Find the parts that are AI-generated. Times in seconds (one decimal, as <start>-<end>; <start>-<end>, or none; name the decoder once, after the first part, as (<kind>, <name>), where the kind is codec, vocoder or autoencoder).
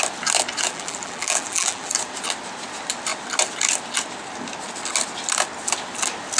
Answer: 0.7-1.9 (vocoder, BigVGAN v2)